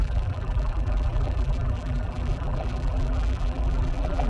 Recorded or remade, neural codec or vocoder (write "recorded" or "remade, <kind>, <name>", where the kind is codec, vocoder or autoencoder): remade, vocoder, BigVGAN v2